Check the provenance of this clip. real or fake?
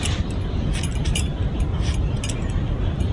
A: real